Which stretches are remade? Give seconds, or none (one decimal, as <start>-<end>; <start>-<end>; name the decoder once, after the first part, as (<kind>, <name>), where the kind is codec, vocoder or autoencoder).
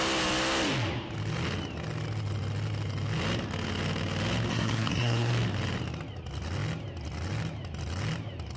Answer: 4.5-5.3 (codec, SNAC)